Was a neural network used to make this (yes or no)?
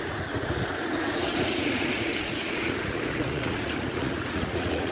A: yes